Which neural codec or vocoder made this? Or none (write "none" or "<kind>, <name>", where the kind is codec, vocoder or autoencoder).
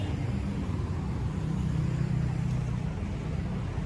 none